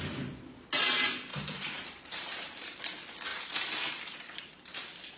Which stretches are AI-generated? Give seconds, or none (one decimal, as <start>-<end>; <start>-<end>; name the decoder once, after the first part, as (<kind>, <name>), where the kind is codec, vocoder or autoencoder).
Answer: 1.3-2.8 (vocoder, BigVGAN v2); 3.3-5.2